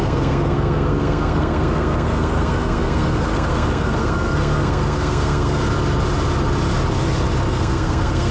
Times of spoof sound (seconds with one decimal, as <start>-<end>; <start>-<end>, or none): 0.0-5.6; 7.5-8.3